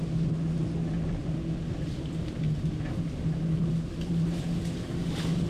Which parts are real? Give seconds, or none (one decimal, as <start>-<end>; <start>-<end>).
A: 0.0-5.5